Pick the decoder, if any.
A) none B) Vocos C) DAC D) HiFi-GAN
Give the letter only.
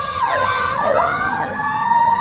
D